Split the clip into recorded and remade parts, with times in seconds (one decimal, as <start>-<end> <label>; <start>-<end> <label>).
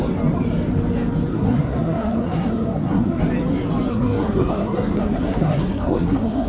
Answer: 0.0-1.3 recorded; 1.3-3.2 remade; 3.2-3.9 recorded; 3.9-6.5 remade